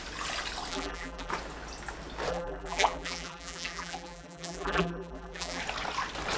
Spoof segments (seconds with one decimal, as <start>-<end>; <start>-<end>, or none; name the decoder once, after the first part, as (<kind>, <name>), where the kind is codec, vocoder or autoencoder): 0.7-1.3 (vocoder, BigVGAN v2); 2.3-5.6